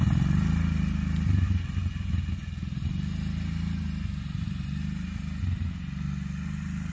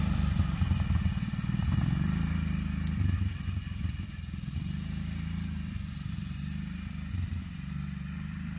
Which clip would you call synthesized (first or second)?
second